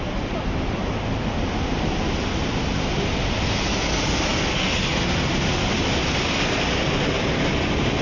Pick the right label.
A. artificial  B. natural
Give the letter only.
B